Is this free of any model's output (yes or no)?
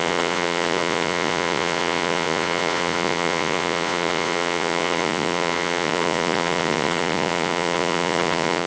no